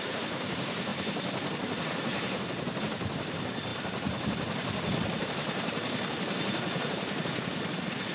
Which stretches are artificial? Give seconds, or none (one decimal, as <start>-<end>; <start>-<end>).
0.0-0.9; 2.8-8.1